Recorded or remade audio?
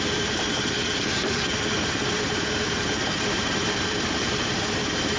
remade